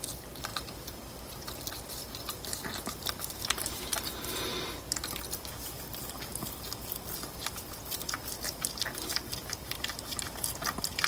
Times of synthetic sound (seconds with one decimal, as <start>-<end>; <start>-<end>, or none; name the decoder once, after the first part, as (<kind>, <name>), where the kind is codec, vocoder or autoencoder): none